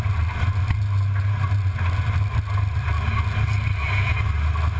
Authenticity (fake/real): real